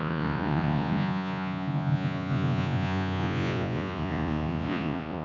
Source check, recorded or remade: remade